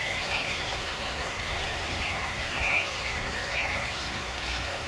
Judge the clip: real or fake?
fake